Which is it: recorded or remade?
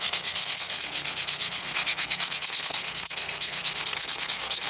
remade